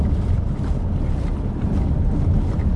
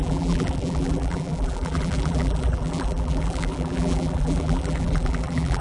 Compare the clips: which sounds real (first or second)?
first